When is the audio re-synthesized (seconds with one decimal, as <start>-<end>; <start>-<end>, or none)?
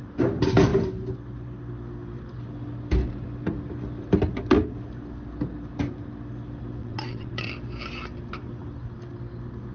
6.8-7.5